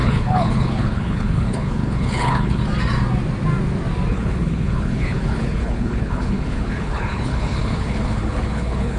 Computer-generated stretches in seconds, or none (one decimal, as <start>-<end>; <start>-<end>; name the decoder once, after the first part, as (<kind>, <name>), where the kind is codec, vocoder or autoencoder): 0.0-2.6 (codec, HILCodec); 4.1-9.0